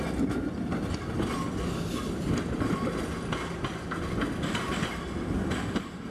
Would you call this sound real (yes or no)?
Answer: yes